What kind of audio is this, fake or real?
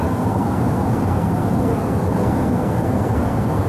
fake